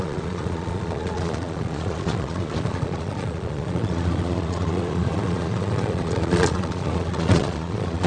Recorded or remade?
remade